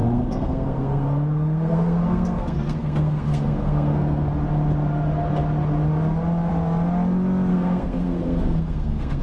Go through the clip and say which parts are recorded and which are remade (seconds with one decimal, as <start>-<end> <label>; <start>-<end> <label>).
0.0-4.3 remade; 4.3-7.5 recorded; 7.5-9.2 remade